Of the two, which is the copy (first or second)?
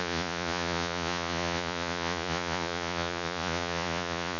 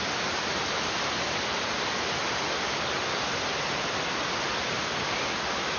first